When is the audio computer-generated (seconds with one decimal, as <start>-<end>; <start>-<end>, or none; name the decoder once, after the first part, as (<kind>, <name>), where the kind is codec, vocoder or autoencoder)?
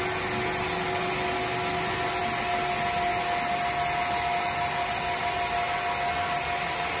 none